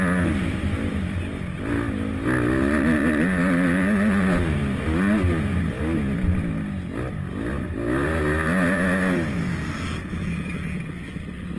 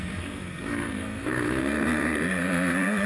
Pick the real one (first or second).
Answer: first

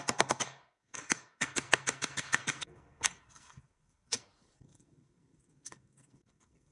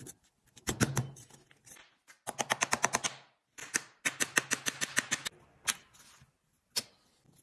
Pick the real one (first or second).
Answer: second